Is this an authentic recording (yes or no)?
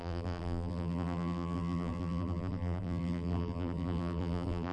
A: no